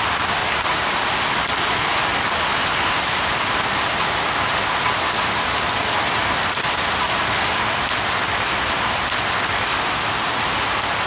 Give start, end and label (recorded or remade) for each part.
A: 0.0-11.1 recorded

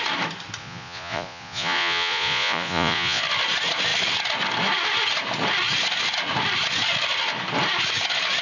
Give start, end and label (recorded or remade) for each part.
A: 0.0-0.6 recorded; 0.6-3.2 remade; 3.2-8.4 recorded

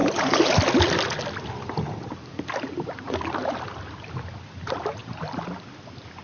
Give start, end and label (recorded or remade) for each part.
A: 0.0-6.2 recorded

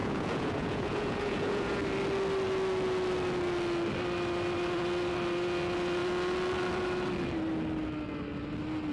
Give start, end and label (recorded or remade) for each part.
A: 0.0-1.8 remade; 1.8-8.9 recorded

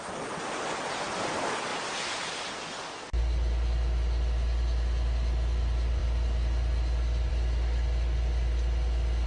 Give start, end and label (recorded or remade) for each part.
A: 0.0-9.3 recorded

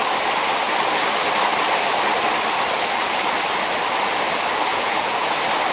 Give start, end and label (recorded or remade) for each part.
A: 0.0-4.7 recorded; 4.7-5.3 remade; 5.3-5.7 recorded

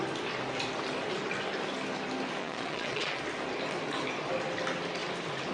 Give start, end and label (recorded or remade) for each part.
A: 0.0-2.4 recorded; 2.4-3.2 remade; 3.2-5.5 recorded

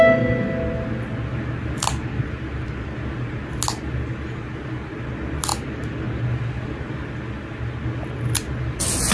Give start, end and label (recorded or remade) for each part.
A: 0.0-9.1 recorded